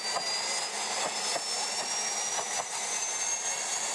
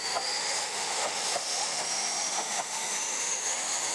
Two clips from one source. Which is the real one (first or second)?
first